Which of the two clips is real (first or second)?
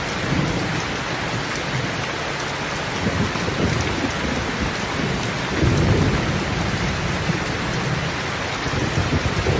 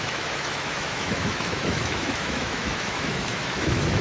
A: first